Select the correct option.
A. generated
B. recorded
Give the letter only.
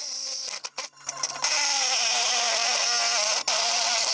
B